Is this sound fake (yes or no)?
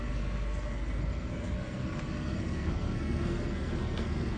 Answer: yes